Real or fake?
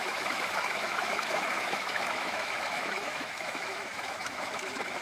fake